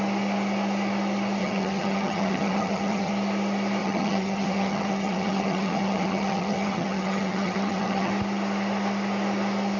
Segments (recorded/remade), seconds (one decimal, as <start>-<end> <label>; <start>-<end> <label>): 0.0-1.4 recorded; 1.4-3.1 remade; 3.1-3.8 recorded; 3.8-8.1 remade; 8.1-9.8 recorded